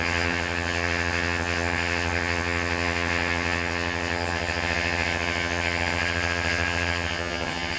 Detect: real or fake fake